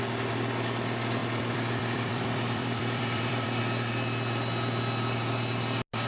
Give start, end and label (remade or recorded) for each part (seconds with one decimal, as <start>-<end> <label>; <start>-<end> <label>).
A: 0.0-1.2 recorded; 1.2-3.6 remade; 3.6-6.1 recorded